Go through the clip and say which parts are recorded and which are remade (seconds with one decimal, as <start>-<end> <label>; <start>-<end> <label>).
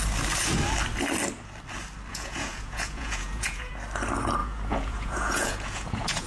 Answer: 0.0-2.1 recorded; 2.1-3.7 remade; 3.7-4.4 recorded; 4.4-6.3 remade